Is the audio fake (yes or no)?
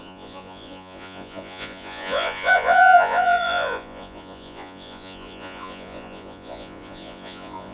yes